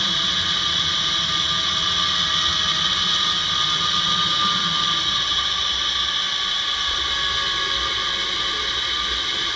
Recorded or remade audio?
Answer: recorded